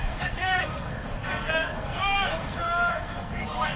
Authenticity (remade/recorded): remade